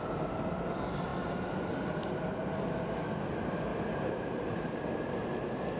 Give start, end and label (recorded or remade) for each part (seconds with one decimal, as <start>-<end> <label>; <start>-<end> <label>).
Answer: 0.0-3.7 recorded; 3.7-4.7 remade; 4.7-5.8 recorded